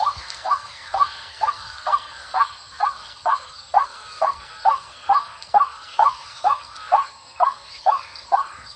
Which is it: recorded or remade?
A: remade